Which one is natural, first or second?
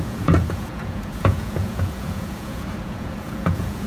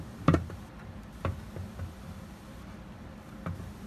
second